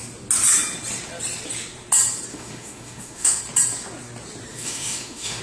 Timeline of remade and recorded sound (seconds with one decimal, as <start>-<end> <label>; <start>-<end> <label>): 0.0-2.3 recorded; 2.3-3.4 remade; 3.4-4.5 recorded; 4.5-5.4 remade